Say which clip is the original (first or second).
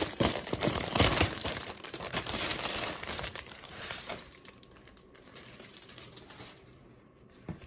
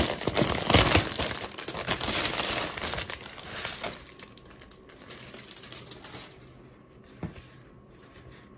second